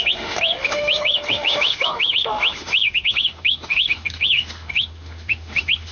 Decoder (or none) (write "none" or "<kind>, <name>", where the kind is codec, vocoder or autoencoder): autoencoder, DAC-VAE